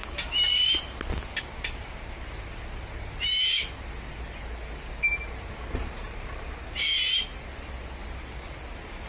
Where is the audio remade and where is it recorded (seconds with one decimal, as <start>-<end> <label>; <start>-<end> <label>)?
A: 0.0-9.1 recorded